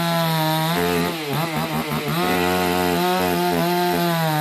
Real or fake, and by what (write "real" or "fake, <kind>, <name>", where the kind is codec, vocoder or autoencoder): real